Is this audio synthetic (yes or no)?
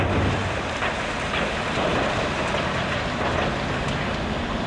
yes